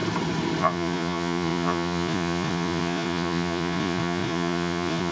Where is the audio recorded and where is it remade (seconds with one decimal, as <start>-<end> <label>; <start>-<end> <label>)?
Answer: 0.0-0.6 recorded; 0.6-5.1 remade